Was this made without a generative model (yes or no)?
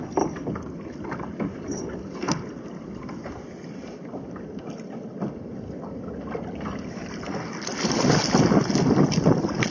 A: yes